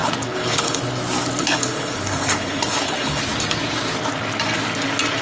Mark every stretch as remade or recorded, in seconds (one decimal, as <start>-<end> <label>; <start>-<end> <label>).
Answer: 0.0-0.8 remade; 0.8-1.4 recorded; 1.4-3.2 remade; 3.2-5.2 recorded